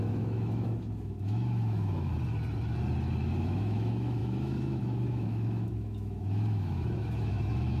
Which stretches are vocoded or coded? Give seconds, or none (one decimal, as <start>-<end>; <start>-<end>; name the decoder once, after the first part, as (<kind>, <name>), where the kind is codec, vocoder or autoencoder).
0.0-2.1 (autoencoder, DAC-VAE); 3.3-7.8